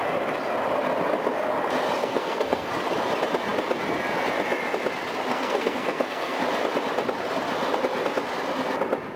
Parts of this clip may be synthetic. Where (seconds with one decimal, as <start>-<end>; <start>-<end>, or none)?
2.0-2.7; 5.3-6.4